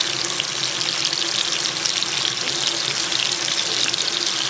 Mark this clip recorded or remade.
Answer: recorded